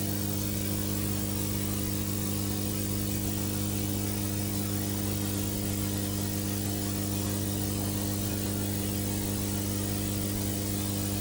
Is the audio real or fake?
real